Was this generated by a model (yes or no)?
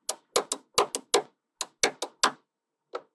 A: no